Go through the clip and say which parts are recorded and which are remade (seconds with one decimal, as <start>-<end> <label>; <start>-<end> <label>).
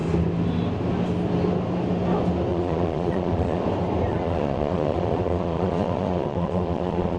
0.0-2.5 recorded; 2.5-3.6 remade; 3.6-4.1 recorded; 4.1-7.2 remade